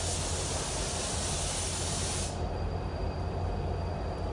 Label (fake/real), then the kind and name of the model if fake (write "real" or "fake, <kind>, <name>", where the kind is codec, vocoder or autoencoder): real